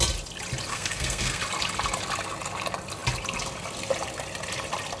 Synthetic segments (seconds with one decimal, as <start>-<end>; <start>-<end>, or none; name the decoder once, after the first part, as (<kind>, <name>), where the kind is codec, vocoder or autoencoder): 0.7-1.4 (codec, SNAC)